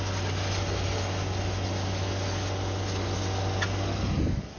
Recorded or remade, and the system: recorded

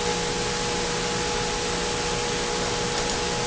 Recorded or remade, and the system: recorded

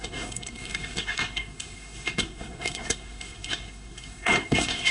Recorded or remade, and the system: remade, codec, SNAC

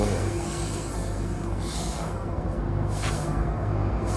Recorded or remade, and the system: remade, codec, SNAC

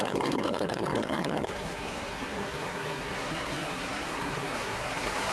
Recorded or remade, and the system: remade, codec, SNAC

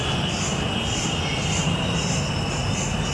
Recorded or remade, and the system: recorded